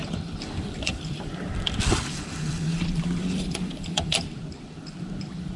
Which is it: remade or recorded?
remade